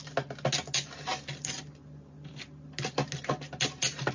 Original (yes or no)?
yes